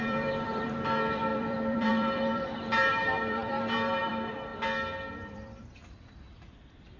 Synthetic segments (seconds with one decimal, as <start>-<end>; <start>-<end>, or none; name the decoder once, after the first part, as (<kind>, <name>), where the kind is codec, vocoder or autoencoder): 0.0-4.5 (vocoder, BigVGAN v2); 5.1-7.0